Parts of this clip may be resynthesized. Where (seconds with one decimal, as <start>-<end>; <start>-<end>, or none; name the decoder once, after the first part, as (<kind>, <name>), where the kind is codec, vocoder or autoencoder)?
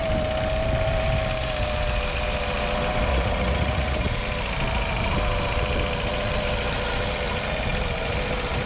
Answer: 3.1-4.2 (vocoder, Vocos)